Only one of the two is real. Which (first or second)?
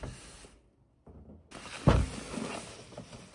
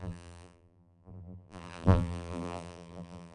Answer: first